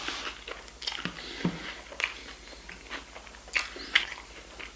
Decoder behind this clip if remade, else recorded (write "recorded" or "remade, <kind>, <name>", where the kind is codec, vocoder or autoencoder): recorded